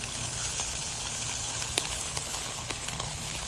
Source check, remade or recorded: remade